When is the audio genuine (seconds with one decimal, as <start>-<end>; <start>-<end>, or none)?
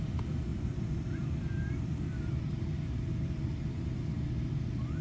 0.0-0.5; 3.5-5.0